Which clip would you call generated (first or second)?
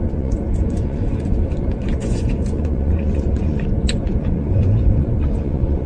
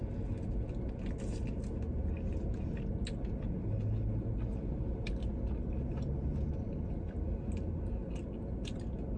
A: first